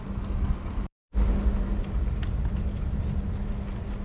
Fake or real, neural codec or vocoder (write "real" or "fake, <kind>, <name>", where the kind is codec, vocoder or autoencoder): real